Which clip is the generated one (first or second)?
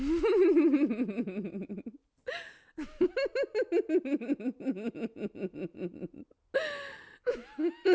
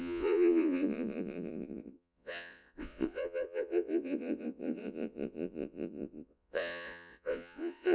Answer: second